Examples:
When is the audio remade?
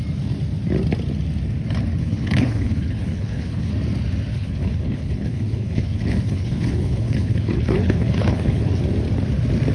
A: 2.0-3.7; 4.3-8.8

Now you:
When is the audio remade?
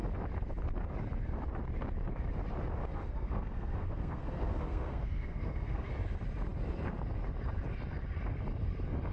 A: 2.8-5.9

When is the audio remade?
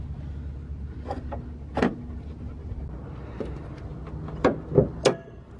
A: none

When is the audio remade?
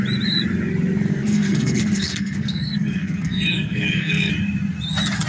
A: 1.1-4.3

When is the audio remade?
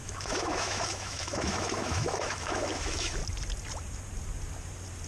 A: 0.0-3.2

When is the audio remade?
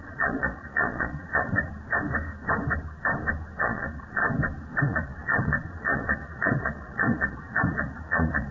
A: 0.0-1.7; 3.6-4.2; 4.8-8.5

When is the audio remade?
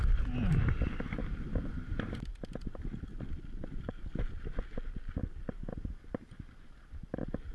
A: none